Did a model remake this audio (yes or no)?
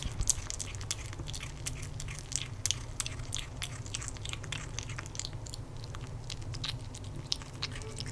no